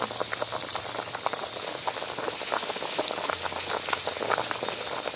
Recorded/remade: recorded